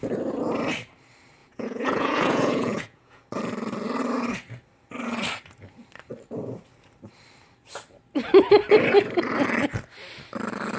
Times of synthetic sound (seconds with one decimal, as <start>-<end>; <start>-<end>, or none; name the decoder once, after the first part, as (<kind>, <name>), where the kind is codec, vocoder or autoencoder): 1.4-3.2 (vocoder, Vocos)